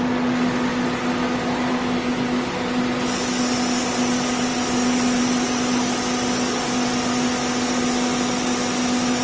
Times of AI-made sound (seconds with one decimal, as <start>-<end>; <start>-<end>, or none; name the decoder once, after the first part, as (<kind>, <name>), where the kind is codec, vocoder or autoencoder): none